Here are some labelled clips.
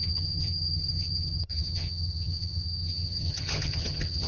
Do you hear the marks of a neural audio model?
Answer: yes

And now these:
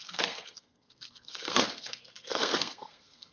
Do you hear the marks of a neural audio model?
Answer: yes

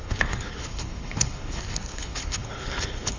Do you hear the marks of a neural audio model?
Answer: yes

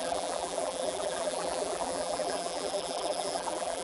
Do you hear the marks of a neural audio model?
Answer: yes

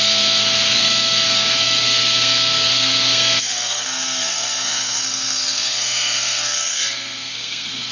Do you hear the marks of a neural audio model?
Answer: yes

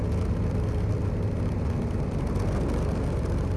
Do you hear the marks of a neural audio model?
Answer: no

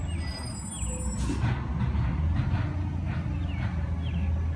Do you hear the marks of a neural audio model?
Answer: no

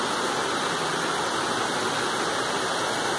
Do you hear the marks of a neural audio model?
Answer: no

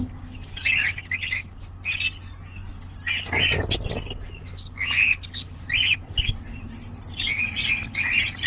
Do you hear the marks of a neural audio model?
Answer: no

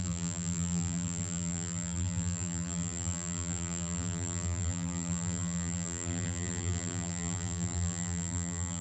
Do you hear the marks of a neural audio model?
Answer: yes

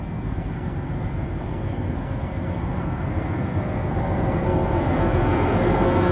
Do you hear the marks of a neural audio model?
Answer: yes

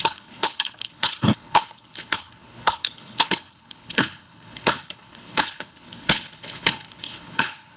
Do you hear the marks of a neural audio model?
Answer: yes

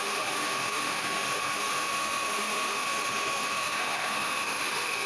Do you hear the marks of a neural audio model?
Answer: yes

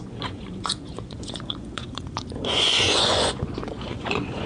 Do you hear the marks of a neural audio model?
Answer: yes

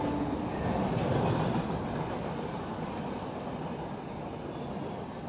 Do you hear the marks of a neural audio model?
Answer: no